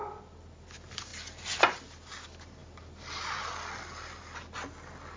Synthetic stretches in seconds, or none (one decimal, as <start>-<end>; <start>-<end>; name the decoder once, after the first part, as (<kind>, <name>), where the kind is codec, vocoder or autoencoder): none